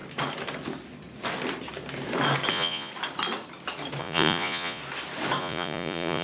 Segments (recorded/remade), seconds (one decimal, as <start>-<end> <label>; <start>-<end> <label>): 0.0-2.5 recorded; 2.5-2.9 remade; 2.9-4.0 recorded; 4.0-4.8 remade; 4.8-5.4 recorded; 5.4-6.2 remade